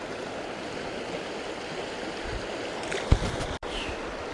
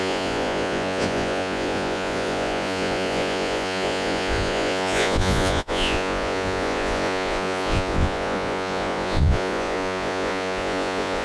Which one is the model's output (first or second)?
second